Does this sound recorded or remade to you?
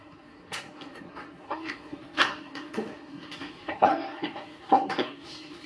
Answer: remade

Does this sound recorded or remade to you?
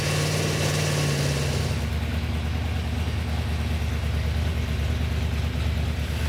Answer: recorded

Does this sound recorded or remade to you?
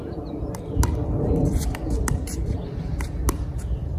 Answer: recorded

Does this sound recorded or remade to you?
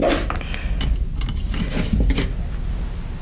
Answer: recorded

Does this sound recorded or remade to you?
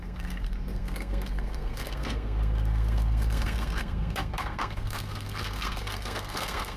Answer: remade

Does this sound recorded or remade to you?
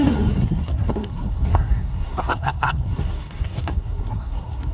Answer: remade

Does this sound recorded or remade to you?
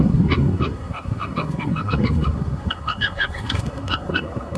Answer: remade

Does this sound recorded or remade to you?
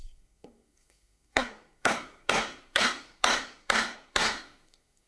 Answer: remade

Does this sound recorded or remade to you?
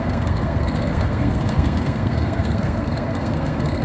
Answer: remade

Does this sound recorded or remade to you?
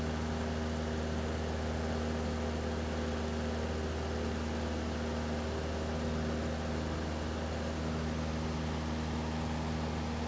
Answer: recorded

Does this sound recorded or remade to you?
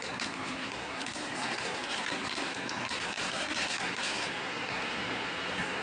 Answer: remade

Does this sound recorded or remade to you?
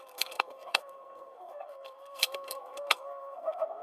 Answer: remade